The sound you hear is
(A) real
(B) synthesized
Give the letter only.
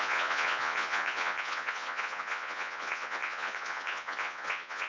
B